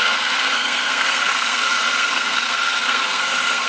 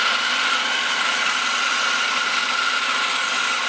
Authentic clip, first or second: second